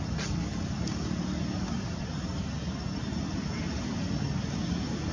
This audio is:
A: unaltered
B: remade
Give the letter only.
A